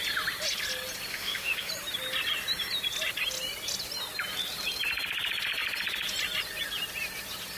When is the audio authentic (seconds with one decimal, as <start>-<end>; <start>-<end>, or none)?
0.0-1.1; 1.7-7.6